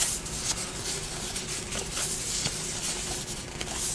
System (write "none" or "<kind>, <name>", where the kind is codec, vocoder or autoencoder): none